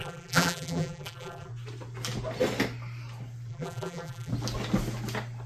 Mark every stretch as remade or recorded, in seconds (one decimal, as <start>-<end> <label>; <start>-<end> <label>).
0.0-1.5 remade; 1.5-3.5 recorded; 3.5-4.3 remade; 4.3-5.5 recorded

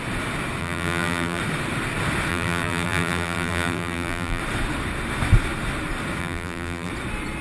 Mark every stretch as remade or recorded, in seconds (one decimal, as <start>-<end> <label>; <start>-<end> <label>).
0.0-0.6 recorded; 0.6-1.4 remade; 1.4-2.3 recorded; 2.3-4.4 remade; 4.4-6.2 recorded; 6.2-6.9 remade; 6.9-7.4 recorded

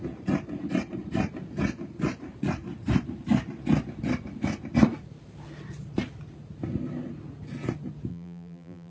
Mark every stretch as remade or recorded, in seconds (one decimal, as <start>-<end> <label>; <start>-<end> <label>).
0.0-8.1 recorded; 8.1-8.9 remade

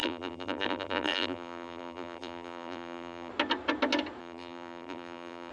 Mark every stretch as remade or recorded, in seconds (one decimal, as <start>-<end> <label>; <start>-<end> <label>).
0.0-3.3 remade; 3.3-4.2 recorded; 4.2-5.5 remade

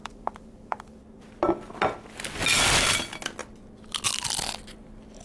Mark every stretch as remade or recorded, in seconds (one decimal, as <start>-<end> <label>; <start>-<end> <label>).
0.0-1.2 remade; 1.2-5.2 recorded

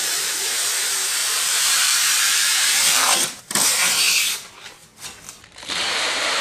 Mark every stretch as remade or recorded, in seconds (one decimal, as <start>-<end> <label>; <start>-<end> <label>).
0.0-0.7 remade; 0.7-1.2 recorded; 1.2-3.4 remade; 3.4-5.5 recorded; 5.5-6.4 remade